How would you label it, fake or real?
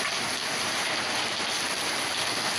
real